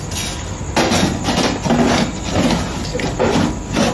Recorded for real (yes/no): yes